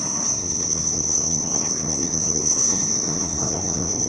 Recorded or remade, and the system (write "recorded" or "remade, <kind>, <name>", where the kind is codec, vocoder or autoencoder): remade, codec, SNAC